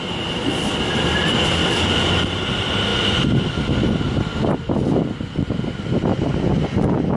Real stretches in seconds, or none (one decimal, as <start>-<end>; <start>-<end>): 0.0-0.4; 2.5-4.3; 4.9-7.2